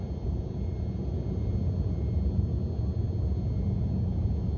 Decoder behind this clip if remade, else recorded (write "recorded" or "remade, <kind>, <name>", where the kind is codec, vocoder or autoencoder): recorded